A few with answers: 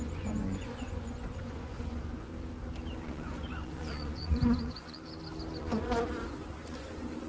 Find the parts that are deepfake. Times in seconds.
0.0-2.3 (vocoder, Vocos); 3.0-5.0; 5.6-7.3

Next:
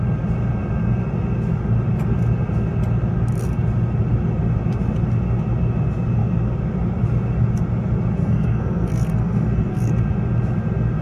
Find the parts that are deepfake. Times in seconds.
8.2-9.9 (codec, SNAC)

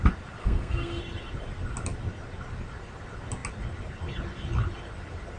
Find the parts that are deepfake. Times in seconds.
0.4-1.0 (codec, SNAC)

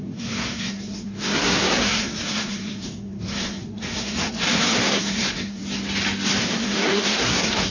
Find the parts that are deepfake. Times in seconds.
0.0-5.6 (codec, SNAC); 6.4-7.7

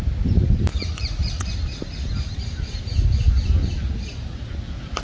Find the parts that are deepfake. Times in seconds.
0.7-1.5 (vocoder, Vocos)